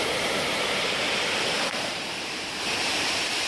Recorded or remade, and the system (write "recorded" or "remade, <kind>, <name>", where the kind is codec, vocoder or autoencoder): remade, vocoder, BigVGAN v2